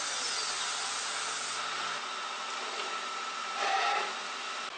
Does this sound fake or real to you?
real